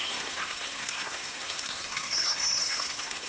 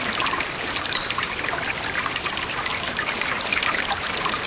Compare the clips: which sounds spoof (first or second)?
first